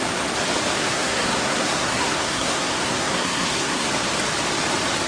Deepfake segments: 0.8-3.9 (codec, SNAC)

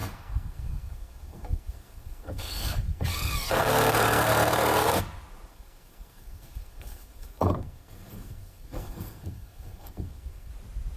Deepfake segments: 0.0-5.0 (codec, SNAC); 5.5-10.5

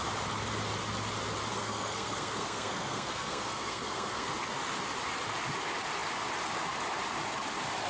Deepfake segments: 1.5-4.3 (codec, SNAC)

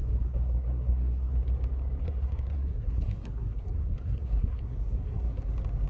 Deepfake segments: 0.0-1.3 (codec, SNAC); 2.0-5.5